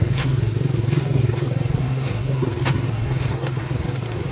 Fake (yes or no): yes